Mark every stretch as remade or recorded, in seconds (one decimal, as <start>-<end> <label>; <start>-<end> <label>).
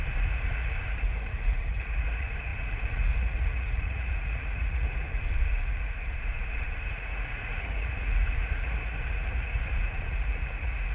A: 0.0-10.9 remade